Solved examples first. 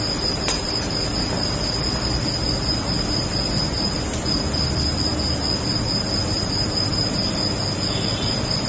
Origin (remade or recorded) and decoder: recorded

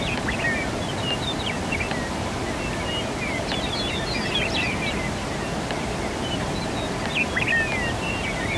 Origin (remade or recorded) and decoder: recorded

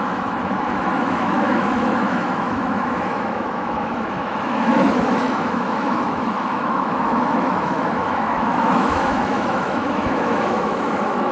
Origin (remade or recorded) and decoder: remade, autoencoder, DAC-VAE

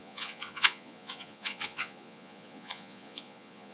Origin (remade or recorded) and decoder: remade, vocoder, Vocos